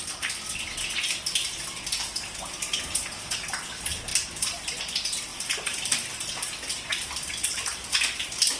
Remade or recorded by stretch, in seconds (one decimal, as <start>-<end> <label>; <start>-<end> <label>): 0.0-4.1 recorded; 4.1-4.8 remade; 4.8-5.3 recorded; 5.3-6.1 remade; 6.1-6.9 recorded; 6.9-8.6 remade

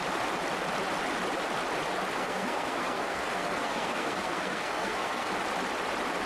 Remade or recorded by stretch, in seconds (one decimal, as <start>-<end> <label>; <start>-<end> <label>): 0.0-2.2 recorded; 2.2-5.3 remade; 5.3-6.3 recorded

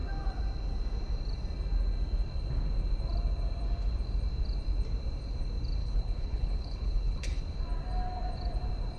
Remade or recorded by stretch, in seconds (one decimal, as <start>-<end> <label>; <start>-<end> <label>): 0.0-5.8 recorded; 5.8-7.4 remade; 7.4-9.0 recorded

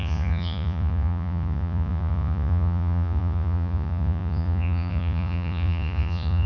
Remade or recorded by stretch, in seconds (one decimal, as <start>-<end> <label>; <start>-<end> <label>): 0.0-6.5 remade

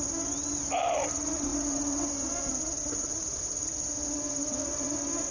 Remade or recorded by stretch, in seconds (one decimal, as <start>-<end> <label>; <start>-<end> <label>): 0.0-5.3 recorded

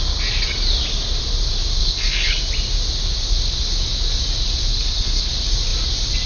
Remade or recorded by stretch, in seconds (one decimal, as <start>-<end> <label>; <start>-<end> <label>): 0.0-1.8 recorded; 1.8-2.4 remade; 2.4-4.7 recorded; 4.7-5.3 remade; 5.3-6.3 recorded